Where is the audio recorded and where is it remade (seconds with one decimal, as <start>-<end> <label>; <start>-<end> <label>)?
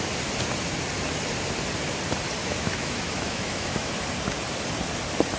0.0-2.4 recorded; 2.4-3.9 remade; 3.9-5.4 recorded